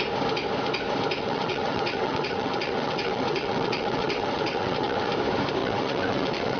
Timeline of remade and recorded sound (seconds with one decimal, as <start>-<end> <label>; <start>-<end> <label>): 0.0-1.2 recorded; 1.2-5.1 remade; 5.1-5.6 recorded; 5.6-6.6 remade